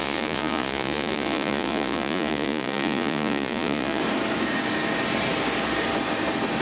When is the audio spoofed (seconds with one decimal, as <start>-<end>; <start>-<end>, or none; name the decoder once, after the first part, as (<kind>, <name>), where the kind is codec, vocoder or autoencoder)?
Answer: 0.0-4.0 (vocoder, Vocos)